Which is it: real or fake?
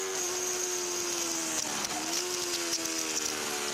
real